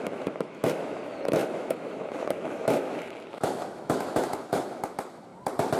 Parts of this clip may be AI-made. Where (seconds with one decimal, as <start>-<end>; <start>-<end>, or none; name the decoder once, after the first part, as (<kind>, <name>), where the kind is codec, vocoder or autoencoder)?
0.0-5.3 (autoencoder, DAC-VAE)